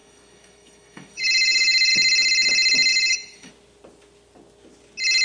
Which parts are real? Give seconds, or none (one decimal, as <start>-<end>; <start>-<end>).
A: 1.9-2.9; 3.5-5.2